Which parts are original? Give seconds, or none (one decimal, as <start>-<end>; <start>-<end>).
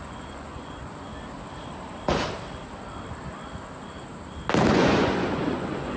1.1-4.7